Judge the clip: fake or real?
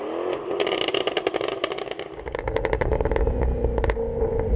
real